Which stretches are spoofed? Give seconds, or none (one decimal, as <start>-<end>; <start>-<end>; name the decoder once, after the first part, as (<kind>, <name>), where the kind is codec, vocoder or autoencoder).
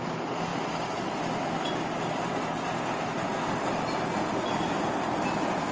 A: none